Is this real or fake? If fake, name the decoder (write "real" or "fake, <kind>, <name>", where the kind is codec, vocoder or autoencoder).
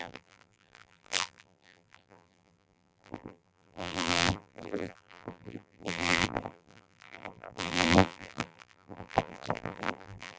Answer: fake, vocoder, BigVGAN v2